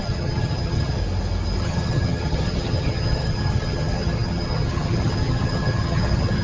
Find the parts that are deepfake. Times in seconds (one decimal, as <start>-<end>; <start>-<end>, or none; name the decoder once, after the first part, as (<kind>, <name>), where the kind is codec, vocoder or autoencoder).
0.0-1.0 (vocoder, HiFi-GAN); 1.6-6.4